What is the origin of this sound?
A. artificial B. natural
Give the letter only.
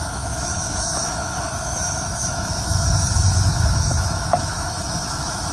A